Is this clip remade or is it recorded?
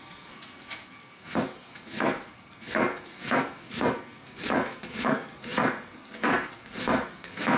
remade